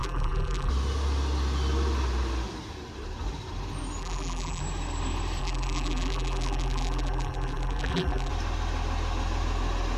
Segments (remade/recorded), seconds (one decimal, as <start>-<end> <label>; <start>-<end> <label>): 0.0-0.7 remade; 0.7-4.0 recorded; 4.0-4.6 remade; 4.6-5.4 recorded; 5.4-8.3 remade; 8.3-10.0 recorded